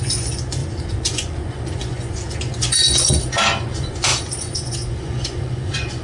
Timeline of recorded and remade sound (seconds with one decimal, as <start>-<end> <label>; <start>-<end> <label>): 0.0-6.0 remade